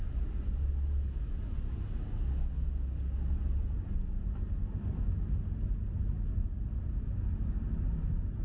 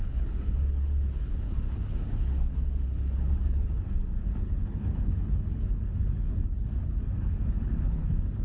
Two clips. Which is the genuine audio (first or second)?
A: first